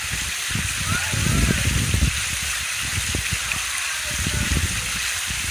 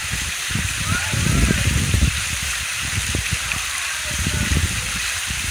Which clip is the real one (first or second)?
first